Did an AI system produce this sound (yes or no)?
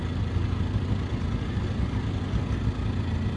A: no